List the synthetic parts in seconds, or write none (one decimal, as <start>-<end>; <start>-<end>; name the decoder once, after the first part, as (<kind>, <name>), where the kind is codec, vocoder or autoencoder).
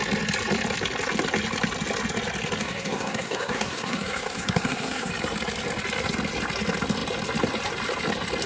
2.6-5.1 (codec, SNAC)